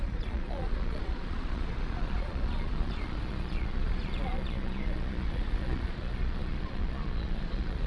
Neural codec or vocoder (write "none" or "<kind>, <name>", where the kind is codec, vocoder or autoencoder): vocoder, Vocos